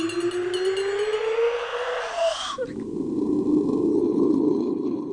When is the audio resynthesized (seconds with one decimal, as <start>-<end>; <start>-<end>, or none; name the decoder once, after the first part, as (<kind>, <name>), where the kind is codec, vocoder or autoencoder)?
3.9-5.1 (codec, HILCodec)